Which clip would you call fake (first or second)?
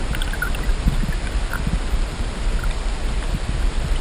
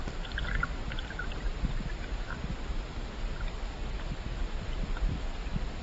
second